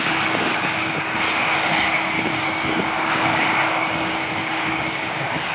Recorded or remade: remade